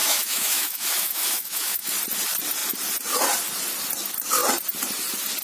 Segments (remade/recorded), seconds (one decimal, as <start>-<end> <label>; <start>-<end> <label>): 0.0-1.9 remade; 1.9-5.4 recorded